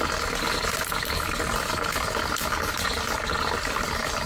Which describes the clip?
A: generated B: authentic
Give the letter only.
B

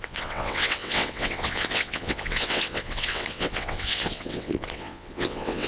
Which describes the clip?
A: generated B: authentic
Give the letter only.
A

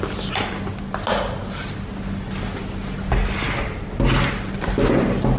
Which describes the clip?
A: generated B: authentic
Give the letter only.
B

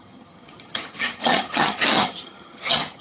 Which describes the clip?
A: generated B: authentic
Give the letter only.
A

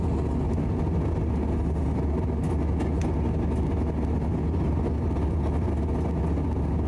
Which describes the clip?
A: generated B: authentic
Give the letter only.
B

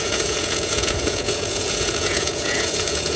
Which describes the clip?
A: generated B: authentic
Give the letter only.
A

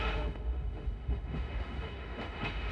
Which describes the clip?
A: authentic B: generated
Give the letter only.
B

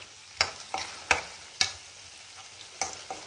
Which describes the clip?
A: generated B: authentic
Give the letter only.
B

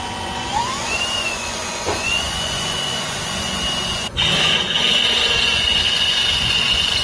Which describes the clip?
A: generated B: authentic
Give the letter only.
A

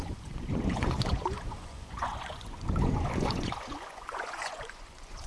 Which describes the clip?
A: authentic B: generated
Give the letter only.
B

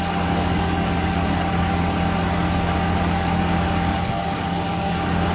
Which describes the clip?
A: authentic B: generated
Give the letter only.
B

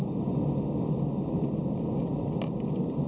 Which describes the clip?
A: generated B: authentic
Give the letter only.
B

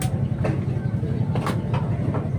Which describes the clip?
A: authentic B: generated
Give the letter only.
A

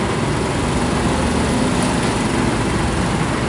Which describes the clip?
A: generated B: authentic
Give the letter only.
B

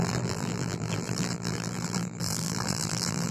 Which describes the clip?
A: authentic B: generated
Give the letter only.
B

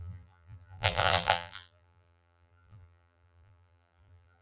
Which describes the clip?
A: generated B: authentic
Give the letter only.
A